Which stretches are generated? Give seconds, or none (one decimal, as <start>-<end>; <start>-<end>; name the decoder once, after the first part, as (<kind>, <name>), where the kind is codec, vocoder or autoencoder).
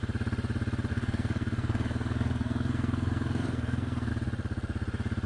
0.9-4.1 (codec, SNAC)